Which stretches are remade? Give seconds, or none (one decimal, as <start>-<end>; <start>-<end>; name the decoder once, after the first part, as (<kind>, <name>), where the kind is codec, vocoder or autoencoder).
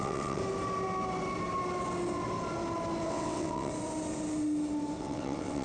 0.0-0.4 (vocoder, WaveNeXt); 3.1-3.7; 5.0-5.6